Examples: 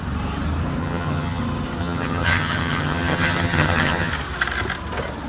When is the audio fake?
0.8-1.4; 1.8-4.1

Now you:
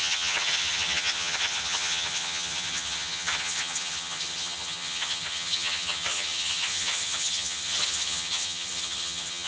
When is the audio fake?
0.0-9.5

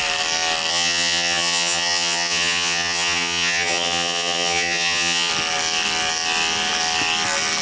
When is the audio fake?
0.7-5.3

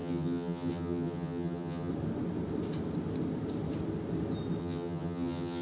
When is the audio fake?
0.0-1.9; 4.6-5.6

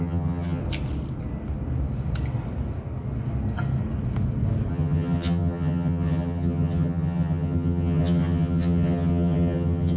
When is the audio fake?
0.0-0.6; 4.7-10.0

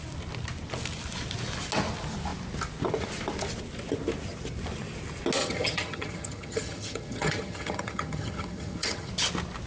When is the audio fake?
5.4-9.1